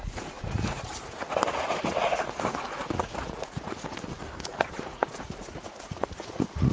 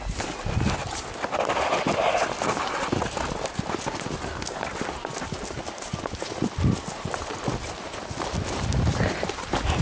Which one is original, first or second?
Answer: second